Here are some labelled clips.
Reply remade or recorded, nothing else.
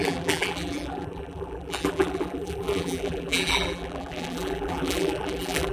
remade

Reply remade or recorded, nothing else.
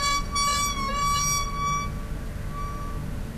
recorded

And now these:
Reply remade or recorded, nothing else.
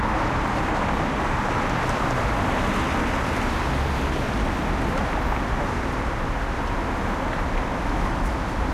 recorded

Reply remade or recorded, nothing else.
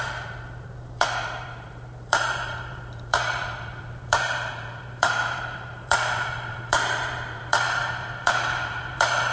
remade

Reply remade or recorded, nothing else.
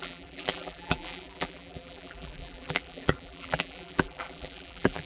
remade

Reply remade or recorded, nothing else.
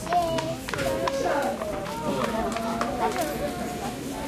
recorded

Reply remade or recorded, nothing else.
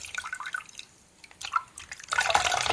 recorded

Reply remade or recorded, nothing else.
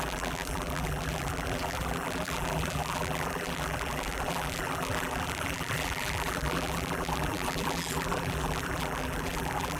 remade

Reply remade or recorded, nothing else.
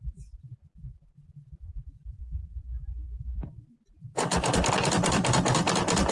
remade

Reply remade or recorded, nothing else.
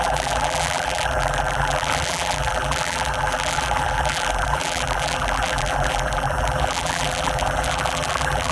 remade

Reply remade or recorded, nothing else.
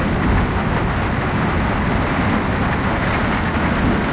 recorded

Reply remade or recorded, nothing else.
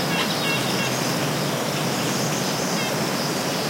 recorded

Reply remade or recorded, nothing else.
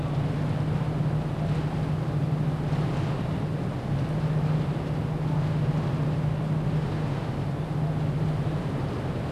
recorded